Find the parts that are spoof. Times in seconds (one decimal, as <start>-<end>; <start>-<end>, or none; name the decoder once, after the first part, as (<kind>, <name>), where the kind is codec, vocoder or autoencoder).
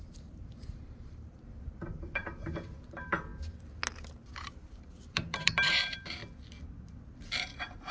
0.0-3.3 (vocoder, BigVGAN v2); 4.3-6.2